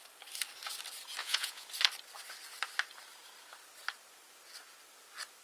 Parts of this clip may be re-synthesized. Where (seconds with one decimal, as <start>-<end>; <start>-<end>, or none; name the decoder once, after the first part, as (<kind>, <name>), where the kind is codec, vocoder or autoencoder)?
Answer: 1.2-1.7 (vocoder, Vocos)